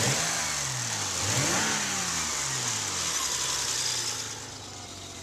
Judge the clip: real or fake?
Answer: real